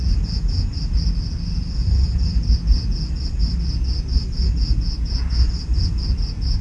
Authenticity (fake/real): real